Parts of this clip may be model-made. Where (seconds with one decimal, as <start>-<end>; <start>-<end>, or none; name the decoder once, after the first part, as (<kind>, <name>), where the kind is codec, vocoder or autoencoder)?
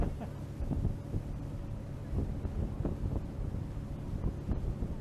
1.4-2.0 (vocoder, BigVGAN v2)